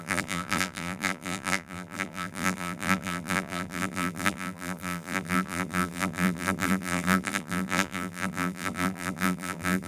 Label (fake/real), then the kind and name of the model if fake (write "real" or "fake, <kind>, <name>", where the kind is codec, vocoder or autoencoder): fake, vocoder, BigVGAN v2